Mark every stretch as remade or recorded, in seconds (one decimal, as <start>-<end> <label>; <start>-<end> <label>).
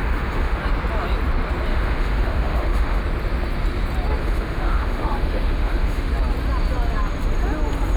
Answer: 0.0-0.6 remade; 0.6-1.7 recorded; 1.7-3.0 remade; 3.0-4.2 recorded; 4.2-6.1 remade; 6.1-8.0 recorded